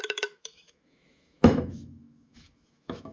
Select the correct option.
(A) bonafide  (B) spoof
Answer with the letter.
B